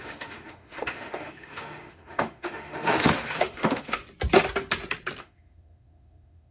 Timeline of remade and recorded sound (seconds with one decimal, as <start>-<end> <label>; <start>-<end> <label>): 0.0-4.0 remade; 4.0-5.2 recorded; 5.2-6.5 remade